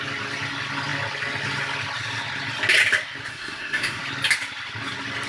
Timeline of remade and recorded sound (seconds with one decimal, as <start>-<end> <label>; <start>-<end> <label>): 0.0-3.3 recorded; 3.3-4.0 remade; 4.0-5.3 recorded